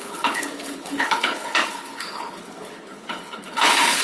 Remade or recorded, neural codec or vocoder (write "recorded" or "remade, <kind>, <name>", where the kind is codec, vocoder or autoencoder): remade, codec, HILCodec